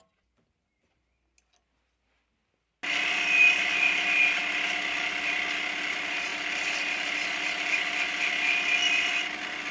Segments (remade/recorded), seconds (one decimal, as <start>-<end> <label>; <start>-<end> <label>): 0.0-9.7 recorded